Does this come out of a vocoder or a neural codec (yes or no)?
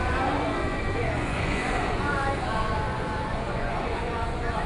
yes